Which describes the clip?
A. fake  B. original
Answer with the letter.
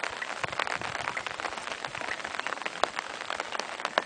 B